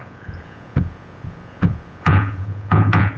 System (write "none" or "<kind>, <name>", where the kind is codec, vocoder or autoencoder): vocoder, Vocos